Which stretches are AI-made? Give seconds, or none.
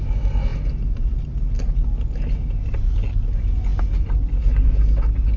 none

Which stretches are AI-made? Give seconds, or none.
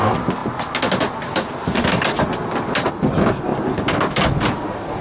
0.0-0.4; 2.9-3.5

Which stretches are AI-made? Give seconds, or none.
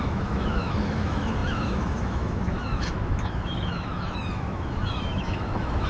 0.0-5.9